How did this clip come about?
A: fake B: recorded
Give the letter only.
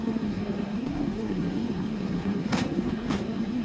A